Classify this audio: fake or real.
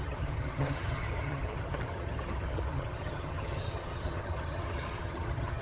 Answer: fake